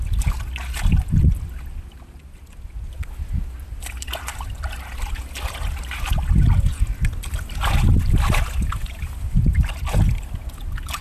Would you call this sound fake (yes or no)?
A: no